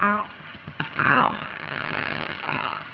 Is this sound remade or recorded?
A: remade